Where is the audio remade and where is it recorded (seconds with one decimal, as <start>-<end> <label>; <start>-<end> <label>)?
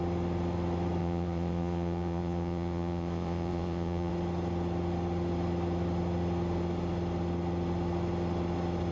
0.0-1.0 recorded; 1.0-4.1 remade; 4.1-8.9 recorded